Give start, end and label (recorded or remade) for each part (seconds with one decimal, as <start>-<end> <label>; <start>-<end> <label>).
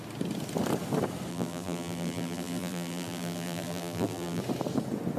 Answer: 0.0-1.3 recorded; 1.3-4.4 remade; 4.4-5.2 recorded